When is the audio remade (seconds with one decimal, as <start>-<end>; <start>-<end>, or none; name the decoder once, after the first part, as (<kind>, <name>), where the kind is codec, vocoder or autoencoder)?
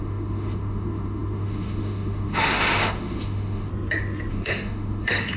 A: 0.0-3.7 (autoencoder, DAC-VAE); 4.3-5.4